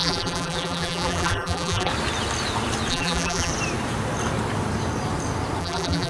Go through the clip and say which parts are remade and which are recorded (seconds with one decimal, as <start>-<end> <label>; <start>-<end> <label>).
0.0-1.9 remade; 1.9-2.9 recorded; 2.9-3.5 remade; 3.5-5.6 recorded; 5.6-6.1 remade